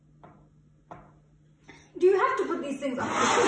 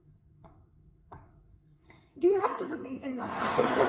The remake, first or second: second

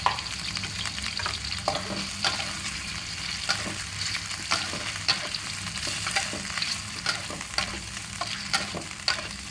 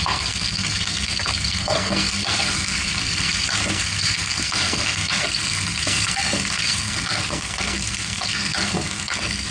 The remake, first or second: second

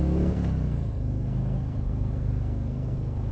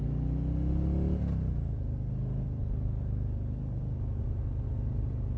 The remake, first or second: first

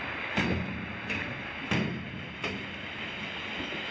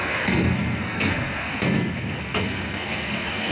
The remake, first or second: second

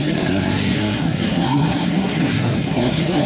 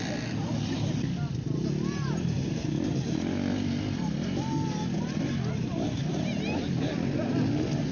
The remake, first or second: first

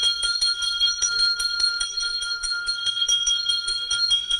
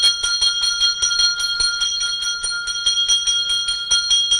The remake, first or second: first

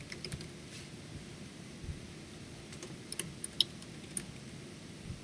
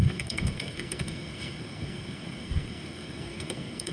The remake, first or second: second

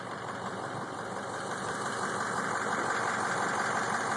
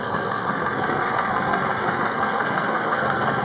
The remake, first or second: second